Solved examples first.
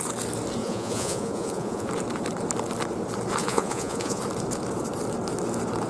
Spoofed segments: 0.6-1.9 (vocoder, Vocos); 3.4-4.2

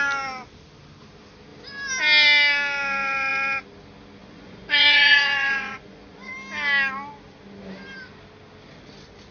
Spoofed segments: 4.2-6.3 (vocoder, Vocos)

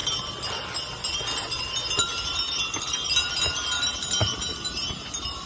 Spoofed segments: none

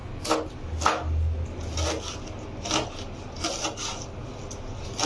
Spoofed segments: none

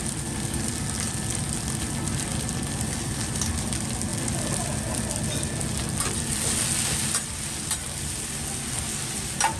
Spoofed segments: none

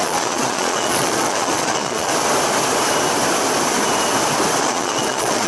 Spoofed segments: 0.0-2.1 (vocoder, Vocos); 4.6-5.5

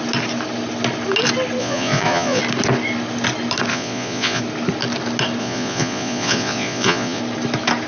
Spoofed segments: 1.6-2.4 (vocoder, Vocos); 3.7-4.4; 5.4-7.2